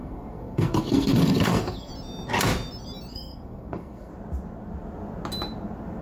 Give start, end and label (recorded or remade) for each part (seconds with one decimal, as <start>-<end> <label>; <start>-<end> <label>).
0.0-1.9 remade; 1.9-3.1 recorded; 3.1-4.1 remade; 4.1-6.0 recorded